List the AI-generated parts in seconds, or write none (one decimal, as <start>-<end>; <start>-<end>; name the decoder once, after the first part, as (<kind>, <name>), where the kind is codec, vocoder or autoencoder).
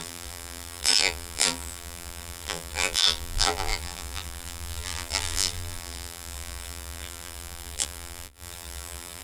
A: 0.0-9.2 (vocoder, BigVGAN v2)